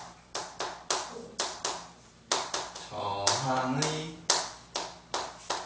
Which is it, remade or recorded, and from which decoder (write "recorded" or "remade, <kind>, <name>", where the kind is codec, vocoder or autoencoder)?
recorded